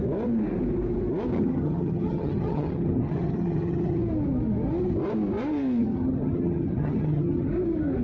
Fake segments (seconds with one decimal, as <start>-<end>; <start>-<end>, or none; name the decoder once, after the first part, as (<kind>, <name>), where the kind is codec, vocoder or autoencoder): 1.3-4.0 (vocoder, HiFi-GAN); 5.8-7.5